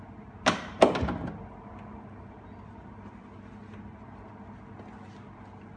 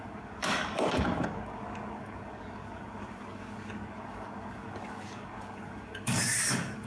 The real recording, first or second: first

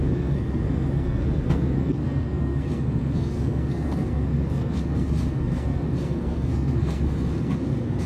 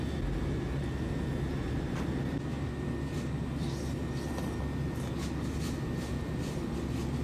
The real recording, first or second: second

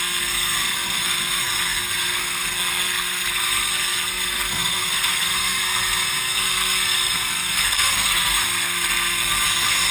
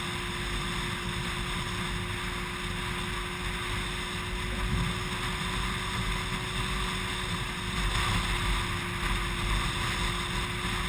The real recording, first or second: second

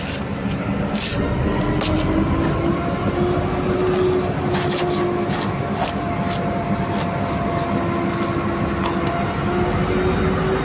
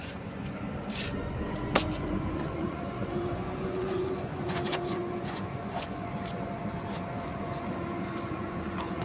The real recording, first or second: first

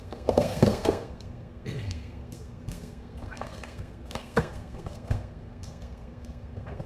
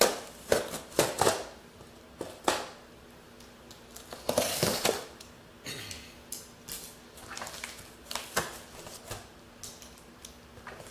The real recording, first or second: second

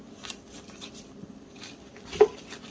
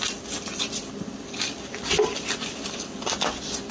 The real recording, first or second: second